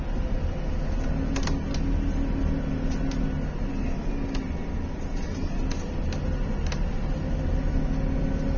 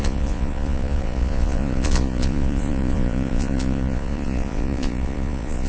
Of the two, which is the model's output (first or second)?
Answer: second